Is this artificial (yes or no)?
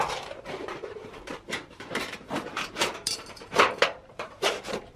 yes